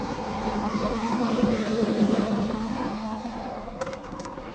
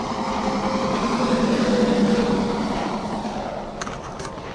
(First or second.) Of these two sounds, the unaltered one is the second